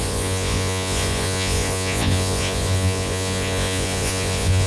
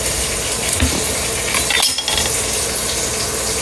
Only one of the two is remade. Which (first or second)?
first